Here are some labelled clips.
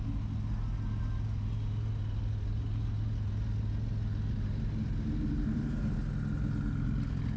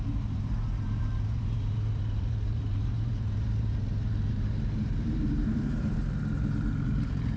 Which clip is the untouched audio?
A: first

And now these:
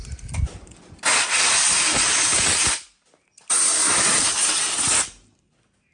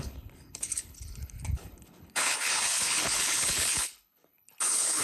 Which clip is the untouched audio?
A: first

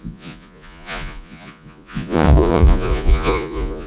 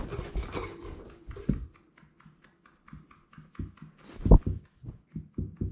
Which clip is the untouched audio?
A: second